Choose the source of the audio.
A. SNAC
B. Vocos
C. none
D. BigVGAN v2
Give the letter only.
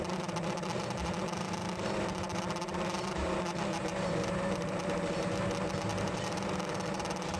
D